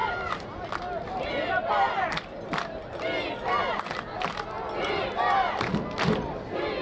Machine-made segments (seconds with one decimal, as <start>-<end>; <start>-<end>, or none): none